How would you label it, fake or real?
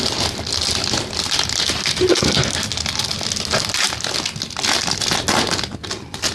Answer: real